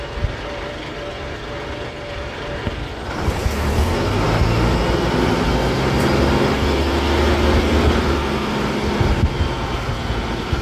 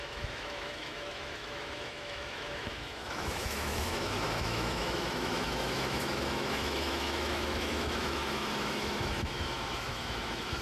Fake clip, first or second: second